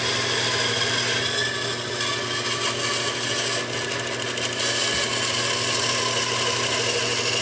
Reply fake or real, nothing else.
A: real